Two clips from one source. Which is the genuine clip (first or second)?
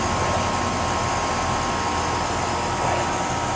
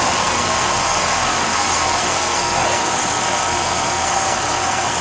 first